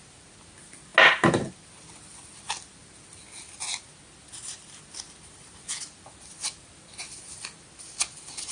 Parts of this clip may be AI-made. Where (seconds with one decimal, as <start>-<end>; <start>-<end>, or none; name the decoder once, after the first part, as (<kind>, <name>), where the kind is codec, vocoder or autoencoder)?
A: none